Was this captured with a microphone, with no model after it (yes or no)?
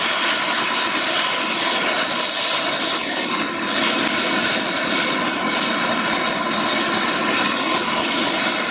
yes